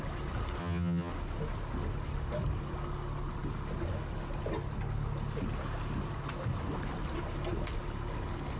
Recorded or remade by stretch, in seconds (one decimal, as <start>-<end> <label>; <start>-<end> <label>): 0.0-0.6 recorded; 0.6-1.1 remade; 1.1-8.6 recorded